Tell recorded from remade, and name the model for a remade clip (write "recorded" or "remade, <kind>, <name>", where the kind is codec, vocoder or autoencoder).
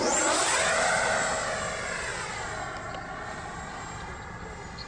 recorded